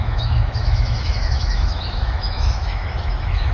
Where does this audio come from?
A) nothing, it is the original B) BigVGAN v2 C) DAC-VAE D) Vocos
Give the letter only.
C